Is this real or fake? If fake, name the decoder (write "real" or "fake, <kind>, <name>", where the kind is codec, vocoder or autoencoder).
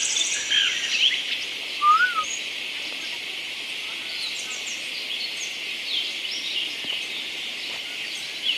real